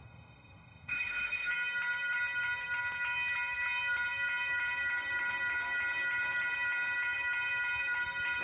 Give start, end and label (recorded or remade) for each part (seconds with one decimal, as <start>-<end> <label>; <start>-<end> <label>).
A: 0.0-1.5 remade; 1.5-8.4 recorded